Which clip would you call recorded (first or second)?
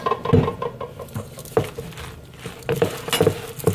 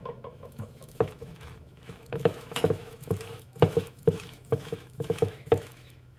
first